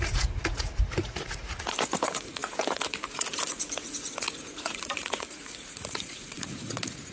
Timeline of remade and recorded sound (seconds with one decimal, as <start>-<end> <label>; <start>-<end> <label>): 0.0-7.1 remade